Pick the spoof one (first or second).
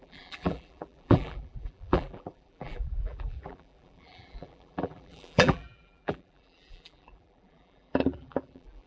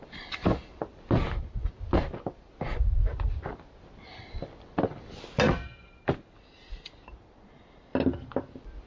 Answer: first